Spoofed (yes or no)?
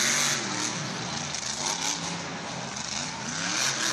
no